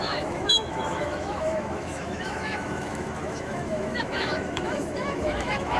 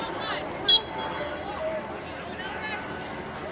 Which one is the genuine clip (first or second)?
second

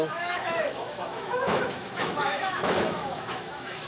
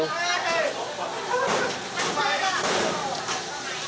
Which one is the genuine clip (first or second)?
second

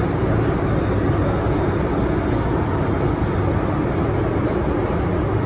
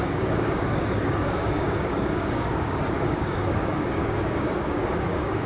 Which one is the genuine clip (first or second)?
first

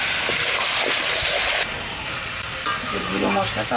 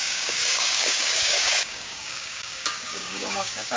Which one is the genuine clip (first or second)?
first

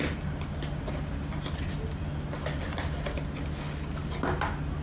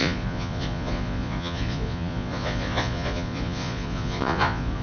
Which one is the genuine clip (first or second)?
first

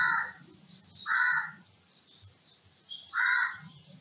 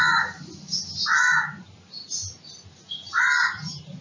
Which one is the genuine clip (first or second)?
second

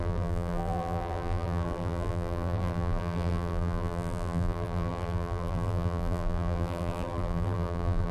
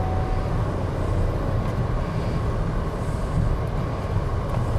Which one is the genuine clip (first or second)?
second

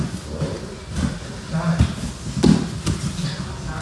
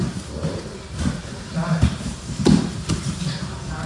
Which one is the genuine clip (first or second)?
first